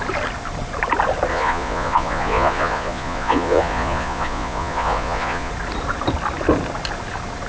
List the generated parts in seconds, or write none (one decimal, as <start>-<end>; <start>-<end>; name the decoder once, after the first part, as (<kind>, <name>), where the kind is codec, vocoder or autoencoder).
1.3-5.5 (vocoder, Vocos)